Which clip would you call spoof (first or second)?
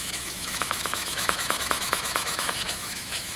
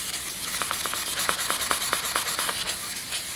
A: first